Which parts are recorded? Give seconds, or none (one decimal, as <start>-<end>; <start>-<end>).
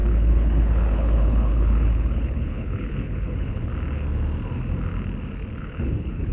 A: 3.7-5.6